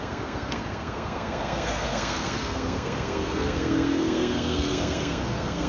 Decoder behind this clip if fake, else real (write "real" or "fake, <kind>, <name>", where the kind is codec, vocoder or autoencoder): fake, codec, SNAC